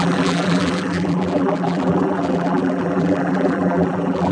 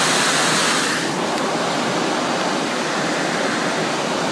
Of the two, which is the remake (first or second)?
first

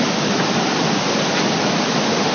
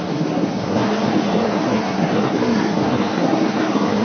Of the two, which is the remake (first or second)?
second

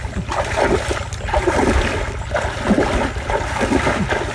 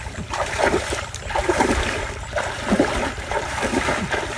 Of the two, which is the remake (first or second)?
second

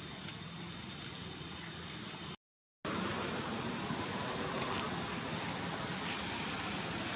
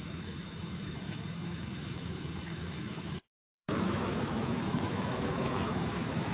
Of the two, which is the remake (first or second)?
second